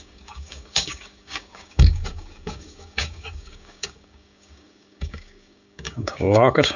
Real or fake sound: fake